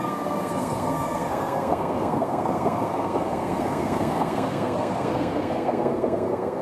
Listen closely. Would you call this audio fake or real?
fake